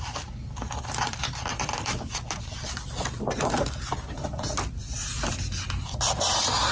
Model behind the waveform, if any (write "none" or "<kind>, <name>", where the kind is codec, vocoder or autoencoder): none